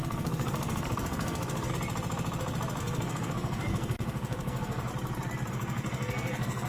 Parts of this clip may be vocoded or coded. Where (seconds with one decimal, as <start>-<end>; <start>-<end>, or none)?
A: 0.0-1.7; 2.8-4.9; 5.5-6.7

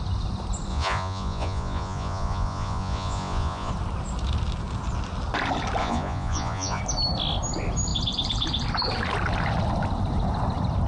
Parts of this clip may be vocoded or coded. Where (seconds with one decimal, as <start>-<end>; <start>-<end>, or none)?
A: 0.7-3.7; 5.8-6.8

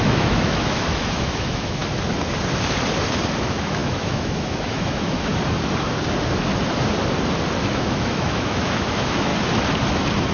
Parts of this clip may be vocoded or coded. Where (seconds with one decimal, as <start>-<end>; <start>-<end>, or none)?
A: 0.0-1.8; 3.4-5.3; 7.7-9.3

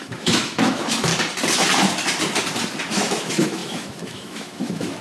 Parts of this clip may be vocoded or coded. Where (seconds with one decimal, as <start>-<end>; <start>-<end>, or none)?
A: 0.0-1.1; 2.9-5.0

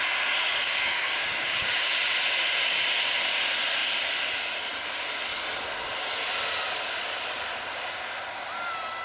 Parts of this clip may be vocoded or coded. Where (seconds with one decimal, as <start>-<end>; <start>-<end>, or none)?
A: 0.5-1.9